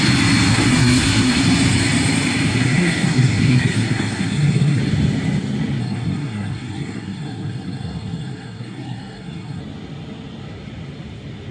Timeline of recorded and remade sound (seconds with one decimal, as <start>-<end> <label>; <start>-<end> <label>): 0.0-0.5 recorded; 0.5-1.4 remade; 1.4-2.5 recorded; 2.5-4.8 remade; 4.8-5.8 recorded; 5.8-9.6 remade; 9.6-11.5 recorded